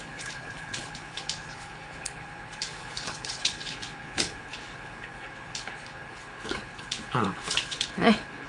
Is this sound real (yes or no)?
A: no